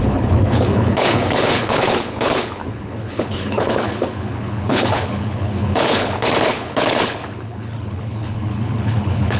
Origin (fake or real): fake